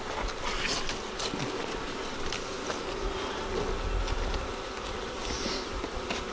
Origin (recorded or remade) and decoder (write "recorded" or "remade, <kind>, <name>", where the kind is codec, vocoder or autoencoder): recorded